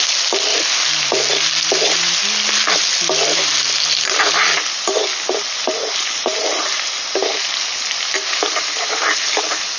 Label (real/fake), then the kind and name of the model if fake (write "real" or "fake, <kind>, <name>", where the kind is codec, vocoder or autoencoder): real